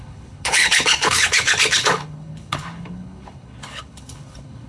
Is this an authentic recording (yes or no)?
no